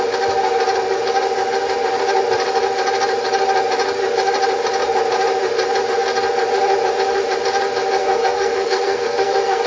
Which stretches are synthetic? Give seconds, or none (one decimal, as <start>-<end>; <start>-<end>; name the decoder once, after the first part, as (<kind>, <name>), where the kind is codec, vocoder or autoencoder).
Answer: 8.0-9.7 (codec, SNAC)